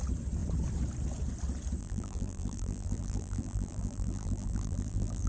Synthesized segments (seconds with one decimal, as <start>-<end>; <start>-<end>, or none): 1.8-5.3